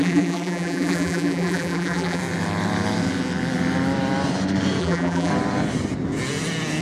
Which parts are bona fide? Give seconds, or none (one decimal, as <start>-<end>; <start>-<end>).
2.2-4.8; 5.3-6.8